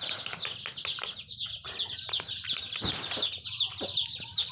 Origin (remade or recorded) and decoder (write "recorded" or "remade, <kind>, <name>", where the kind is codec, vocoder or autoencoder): recorded